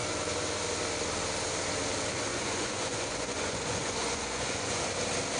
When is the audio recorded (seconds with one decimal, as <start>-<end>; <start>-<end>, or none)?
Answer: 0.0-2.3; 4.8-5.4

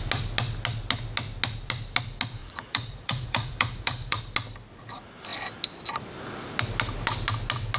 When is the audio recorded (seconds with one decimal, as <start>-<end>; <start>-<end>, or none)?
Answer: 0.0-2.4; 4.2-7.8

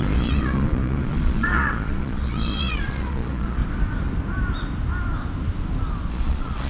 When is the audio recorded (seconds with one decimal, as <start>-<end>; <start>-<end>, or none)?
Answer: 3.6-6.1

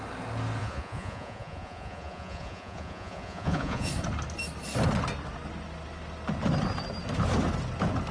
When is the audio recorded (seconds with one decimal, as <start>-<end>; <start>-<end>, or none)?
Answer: 0.0-0.6; 3.9-8.1

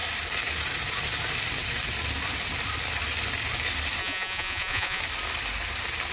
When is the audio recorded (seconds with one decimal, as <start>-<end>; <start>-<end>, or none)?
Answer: 0.0-4.0; 5.0-6.1

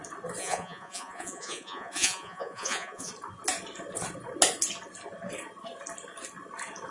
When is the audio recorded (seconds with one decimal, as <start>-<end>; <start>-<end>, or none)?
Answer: 0.0-0.4; 3.1-6.9

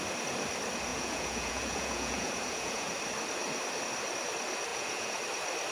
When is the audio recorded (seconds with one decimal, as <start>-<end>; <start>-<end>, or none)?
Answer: 0.0-0.9; 2.9-4.7; 5.2-5.7